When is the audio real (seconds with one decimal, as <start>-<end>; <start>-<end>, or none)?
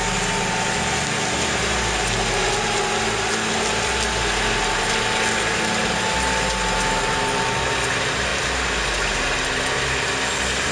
0.0-10.7